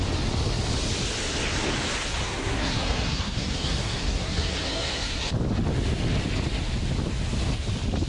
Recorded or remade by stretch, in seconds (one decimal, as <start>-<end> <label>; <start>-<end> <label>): 0.0-2.2 recorded; 2.2-5.3 remade; 5.3-8.1 recorded